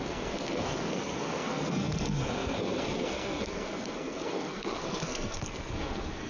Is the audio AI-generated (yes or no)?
yes